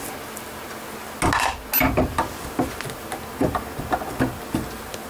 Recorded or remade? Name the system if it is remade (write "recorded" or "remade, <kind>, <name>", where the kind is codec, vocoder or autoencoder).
recorded